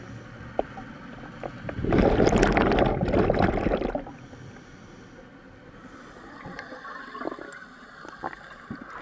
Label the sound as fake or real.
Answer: real